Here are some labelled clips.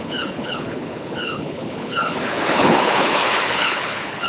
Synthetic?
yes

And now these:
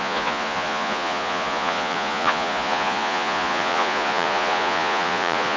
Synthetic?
yes